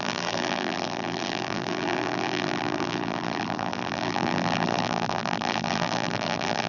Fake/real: fake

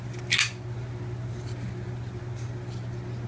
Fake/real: real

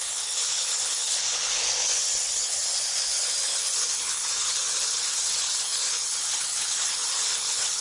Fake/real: fake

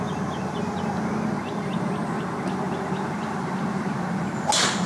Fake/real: real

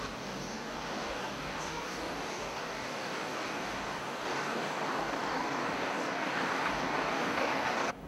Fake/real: fake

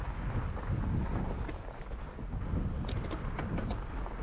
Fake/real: real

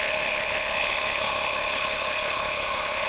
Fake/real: fake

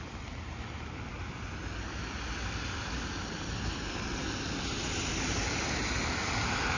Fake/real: real